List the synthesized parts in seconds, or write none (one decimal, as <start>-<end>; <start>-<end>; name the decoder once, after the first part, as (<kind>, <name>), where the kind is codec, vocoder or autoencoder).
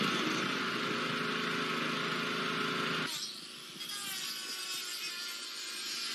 none